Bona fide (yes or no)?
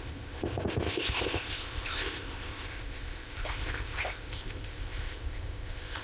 no